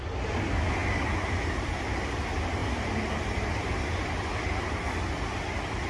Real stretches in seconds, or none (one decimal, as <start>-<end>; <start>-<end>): 0.0-5.9